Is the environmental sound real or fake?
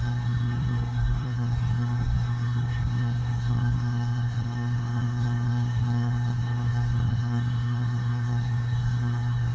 fake